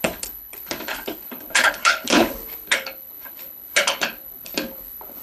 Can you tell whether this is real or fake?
fake